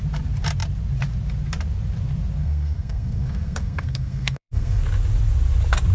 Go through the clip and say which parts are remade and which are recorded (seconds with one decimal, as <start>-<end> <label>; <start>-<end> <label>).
0.0-2.4 recorded; 2.4-4.8 remade; 4.8-5.9 recorded